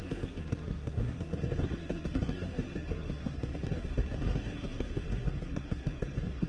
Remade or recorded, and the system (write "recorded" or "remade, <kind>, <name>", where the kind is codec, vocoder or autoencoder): remade, codec, SNAC